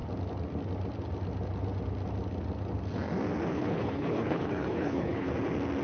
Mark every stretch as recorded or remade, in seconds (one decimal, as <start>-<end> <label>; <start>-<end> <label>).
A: 0.0-3.5 recorded; 3.5-5.3 remade; 5.3-5.8 recorded